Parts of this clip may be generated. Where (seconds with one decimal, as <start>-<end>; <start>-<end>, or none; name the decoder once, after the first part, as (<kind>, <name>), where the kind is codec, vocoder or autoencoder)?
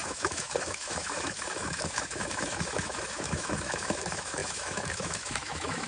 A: 0.0-5.9 (autoencoder, DAC-VAE)